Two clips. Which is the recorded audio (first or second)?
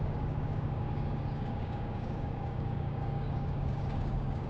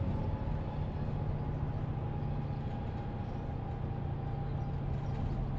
second